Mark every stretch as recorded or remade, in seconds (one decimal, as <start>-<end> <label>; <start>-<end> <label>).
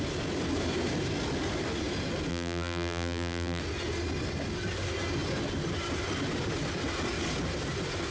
0.0-2.3 recorded; 2.3-3.6 remade; 3.6-8.1 recorded